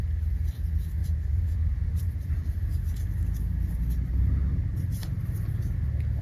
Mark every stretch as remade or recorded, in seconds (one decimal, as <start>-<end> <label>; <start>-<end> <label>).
0.0-1.0 recorded; 1.0-2.6 remade; 2.6-5.0 recorded; 5.0-5.7 remade; 5.7-6.2 recorded